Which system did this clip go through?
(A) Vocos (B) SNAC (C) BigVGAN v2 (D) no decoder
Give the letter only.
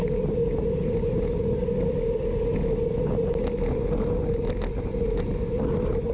D